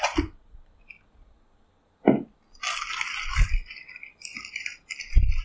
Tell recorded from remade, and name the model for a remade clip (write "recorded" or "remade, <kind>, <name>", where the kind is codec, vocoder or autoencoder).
recorded